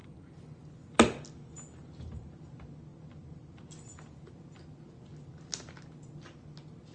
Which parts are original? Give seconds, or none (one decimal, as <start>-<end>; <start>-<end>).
0.7-6.9